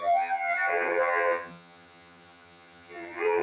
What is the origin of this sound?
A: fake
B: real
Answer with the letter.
A